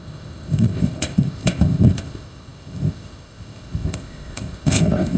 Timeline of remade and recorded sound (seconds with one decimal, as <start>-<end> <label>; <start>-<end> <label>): 0.0-5.2 remade